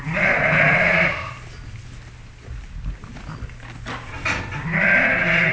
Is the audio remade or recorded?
recorded